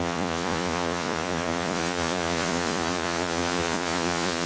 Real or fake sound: fake